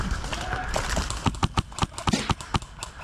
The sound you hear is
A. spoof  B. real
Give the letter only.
B